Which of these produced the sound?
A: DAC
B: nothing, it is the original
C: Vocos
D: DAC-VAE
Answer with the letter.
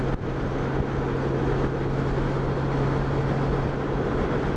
B